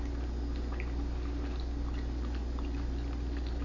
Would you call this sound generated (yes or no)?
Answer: no